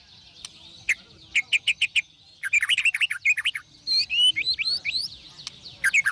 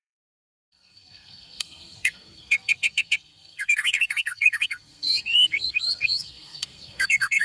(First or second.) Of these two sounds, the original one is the first